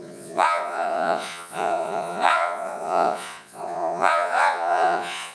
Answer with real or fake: fake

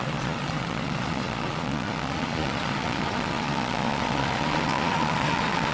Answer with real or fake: fake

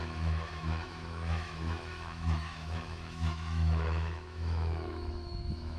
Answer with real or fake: fake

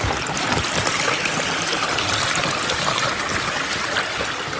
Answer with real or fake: real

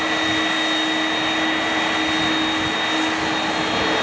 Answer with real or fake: real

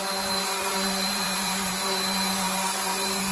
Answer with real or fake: fake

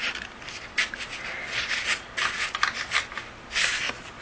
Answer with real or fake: real